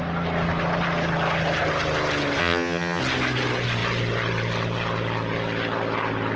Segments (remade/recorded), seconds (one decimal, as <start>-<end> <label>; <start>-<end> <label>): 0.0-2.4 recorded; 2.4-3.0 remade; 3.0-6.4 recorded